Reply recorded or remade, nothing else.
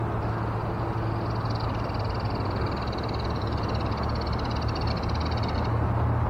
recorded